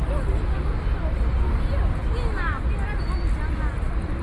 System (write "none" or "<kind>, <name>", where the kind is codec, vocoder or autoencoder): none